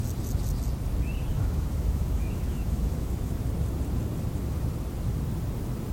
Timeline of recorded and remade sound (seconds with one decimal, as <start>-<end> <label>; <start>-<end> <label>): 0.0-1.3 recorded; 1.3-3.3 remade; 3.3-5.9 recorded